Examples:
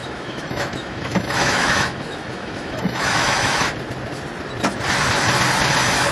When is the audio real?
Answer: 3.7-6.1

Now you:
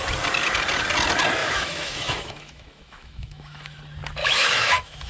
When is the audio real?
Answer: 0.0-1.4; 3.8-4.2

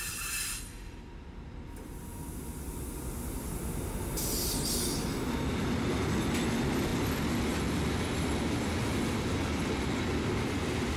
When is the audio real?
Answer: 0.0-11.0

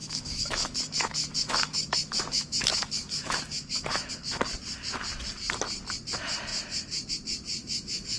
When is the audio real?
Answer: 4.1-7.6